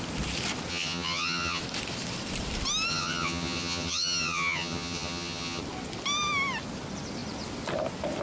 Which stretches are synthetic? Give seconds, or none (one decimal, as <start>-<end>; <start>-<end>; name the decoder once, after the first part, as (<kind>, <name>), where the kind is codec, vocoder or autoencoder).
0.7-1.6 (vocoder, HiFi-GAN); 2.9-5.6

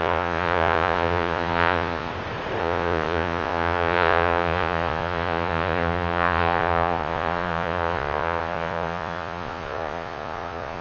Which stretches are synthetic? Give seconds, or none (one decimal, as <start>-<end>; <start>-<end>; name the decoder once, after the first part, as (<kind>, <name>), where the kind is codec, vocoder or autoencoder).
0.0-2.1 (vocoder, Vocos); 2.6-10.8

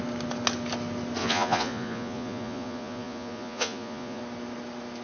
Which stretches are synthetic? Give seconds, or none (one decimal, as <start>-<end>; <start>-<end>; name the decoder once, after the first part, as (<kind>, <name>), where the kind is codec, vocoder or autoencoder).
1.2-4.2 (vocoder, Vocos)

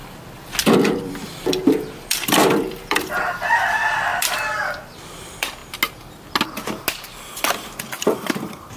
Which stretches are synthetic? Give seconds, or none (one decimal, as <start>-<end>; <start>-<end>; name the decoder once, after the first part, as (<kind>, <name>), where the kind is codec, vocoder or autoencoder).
1.0-5.6 (vocoder, BigVGAN v2); 7.0-8.8

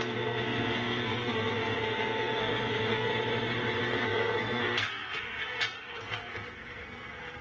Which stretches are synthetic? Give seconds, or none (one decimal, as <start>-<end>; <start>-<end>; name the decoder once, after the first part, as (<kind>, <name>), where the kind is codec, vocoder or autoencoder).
0.0-3.1 (codec, SNAC); 3.8-7.4

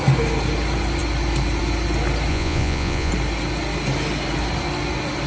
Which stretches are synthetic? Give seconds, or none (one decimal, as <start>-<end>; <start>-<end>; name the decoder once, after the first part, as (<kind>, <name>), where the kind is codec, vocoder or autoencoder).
2.3-3.1 (vocoder, Vocos)